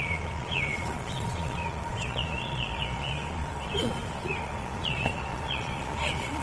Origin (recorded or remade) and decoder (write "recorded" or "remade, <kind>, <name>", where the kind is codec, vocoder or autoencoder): remade, vocoder, Vocos